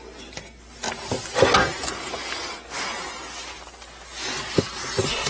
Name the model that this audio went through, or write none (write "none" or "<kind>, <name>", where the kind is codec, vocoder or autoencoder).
none